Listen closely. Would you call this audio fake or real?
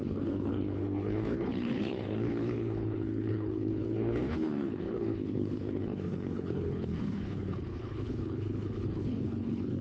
fake